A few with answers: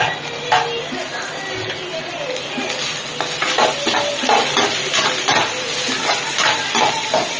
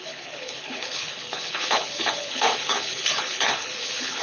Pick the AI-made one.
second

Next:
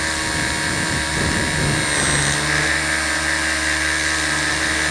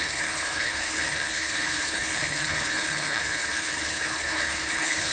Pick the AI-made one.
second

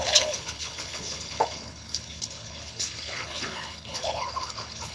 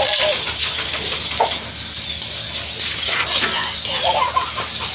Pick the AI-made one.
first